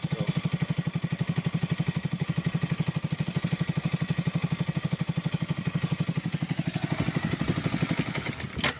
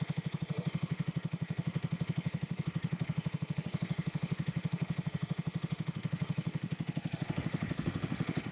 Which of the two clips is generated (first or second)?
second